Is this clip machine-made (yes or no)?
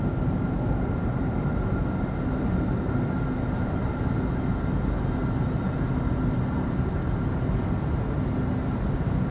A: no